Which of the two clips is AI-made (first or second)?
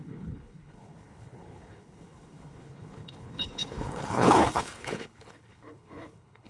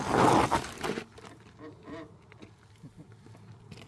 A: first